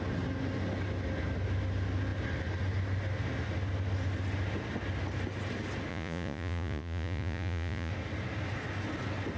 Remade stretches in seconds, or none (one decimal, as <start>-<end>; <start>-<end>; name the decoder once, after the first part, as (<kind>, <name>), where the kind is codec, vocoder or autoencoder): 5.9-7.9 (vocoder, Vocos)